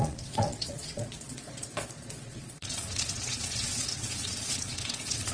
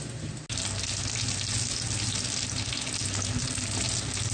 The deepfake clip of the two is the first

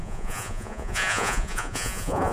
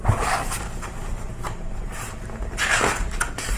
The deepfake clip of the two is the first